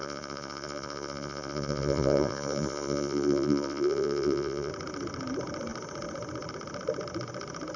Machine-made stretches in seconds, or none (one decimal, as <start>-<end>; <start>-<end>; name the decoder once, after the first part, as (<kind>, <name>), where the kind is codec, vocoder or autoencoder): 0.0-4.7 (vocoder, Vocos)